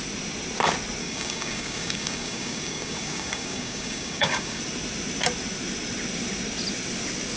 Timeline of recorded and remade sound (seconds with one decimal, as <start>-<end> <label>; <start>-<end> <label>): 0.0-1.0 recorded; 1.0-4.6 remade; 4.6-7.4 recorded